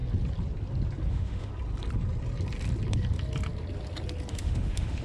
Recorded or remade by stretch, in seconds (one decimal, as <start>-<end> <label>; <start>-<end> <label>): 0.0-1.1 recorded; 1.1-1.5 remade; 1.5-4.3 recorded; 4.3-5.0 remade